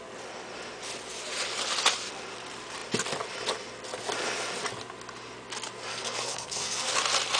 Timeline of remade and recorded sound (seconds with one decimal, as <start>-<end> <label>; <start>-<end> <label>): 0.0-5.9 recorded; 5.9-7.0 remade; 7.0-7.4 recorded